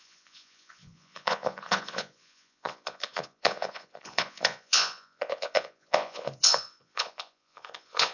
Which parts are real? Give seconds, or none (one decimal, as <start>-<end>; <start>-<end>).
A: none